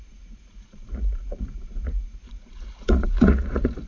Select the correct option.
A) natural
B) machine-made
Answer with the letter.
B